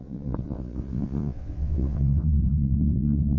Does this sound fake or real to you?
fake